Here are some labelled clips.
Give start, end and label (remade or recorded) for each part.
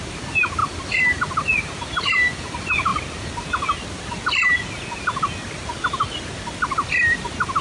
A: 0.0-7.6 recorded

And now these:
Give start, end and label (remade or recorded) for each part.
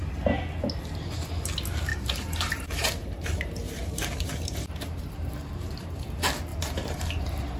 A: 0.0-1.9 recorded; 1.9-6.0 remade; 6.0-6.5 recorded; 6.5-7.6 remade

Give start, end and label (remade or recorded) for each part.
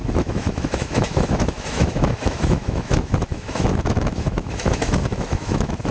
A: 0.0-5.9 remade